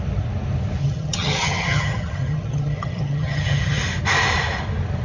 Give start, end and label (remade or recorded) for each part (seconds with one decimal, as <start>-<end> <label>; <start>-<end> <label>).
0.0-0.8 recorded; 0.8-3.8 remade; 3.8-5.0 recorded